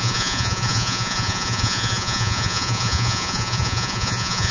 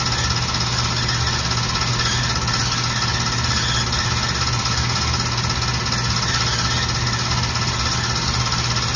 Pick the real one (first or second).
second